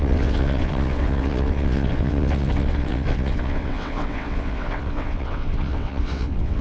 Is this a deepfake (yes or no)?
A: yes